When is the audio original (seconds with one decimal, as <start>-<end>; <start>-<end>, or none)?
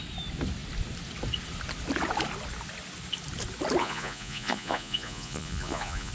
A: 0.0-3.8